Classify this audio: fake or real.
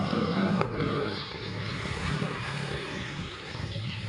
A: fake